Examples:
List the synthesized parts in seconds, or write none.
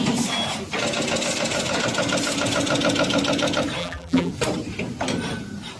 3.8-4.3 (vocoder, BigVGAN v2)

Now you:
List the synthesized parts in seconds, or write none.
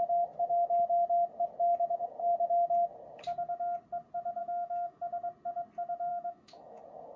4.4-5.0 (autoencoder, DAC-VAE); 6.1-6.8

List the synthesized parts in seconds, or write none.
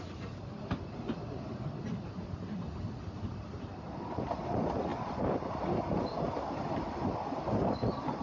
4.9-5.5 (vocoder, BigVGAN v2)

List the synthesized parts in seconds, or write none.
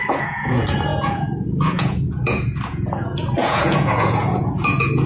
0.0-5.1 (vocoder, Vocos)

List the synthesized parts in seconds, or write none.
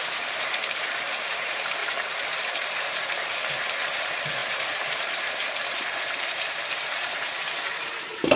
0.0-8.4 (vocoder, BigVGAN v2)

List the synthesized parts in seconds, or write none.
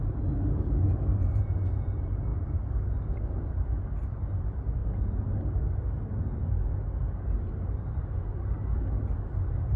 none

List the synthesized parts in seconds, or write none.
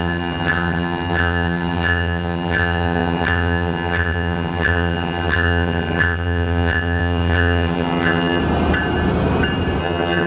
0.0-8.4 (vocoder, HiFi-GAN); 9.8-10.3